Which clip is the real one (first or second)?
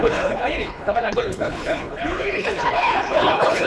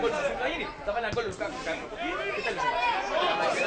second